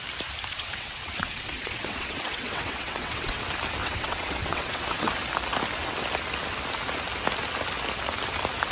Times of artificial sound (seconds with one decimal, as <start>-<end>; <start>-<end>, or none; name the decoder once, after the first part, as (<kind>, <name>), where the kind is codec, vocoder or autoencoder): 0.5-3.4 (vocoder, WaveNeXt); 3.8-5.1